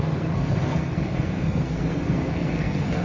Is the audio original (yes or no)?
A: no